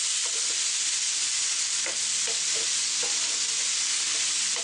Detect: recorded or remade recorded